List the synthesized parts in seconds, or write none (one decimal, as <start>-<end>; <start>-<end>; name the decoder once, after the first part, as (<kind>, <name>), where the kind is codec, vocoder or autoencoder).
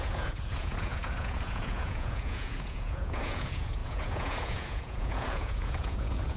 0.0-6.4 (vocoder, Vocos)